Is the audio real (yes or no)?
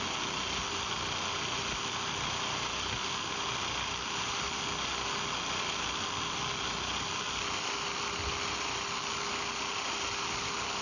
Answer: yes